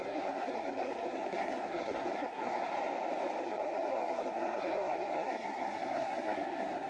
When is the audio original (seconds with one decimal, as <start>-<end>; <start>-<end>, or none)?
2.7-3.4